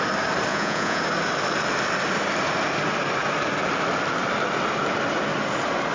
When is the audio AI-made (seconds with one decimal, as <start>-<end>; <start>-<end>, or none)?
0.5-1.0